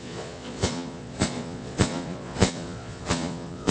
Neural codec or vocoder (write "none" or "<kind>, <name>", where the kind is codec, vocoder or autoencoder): vocoder, Vocos